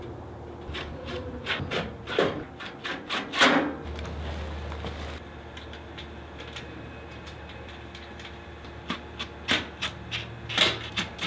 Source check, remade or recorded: recorded